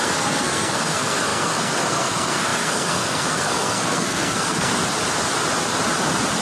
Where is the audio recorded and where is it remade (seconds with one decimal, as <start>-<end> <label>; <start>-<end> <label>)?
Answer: 0.0-4.7 remade; 4.7-6.4 recorded